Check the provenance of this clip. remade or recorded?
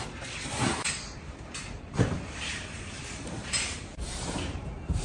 remade